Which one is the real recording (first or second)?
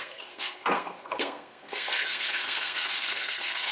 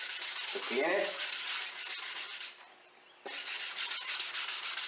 second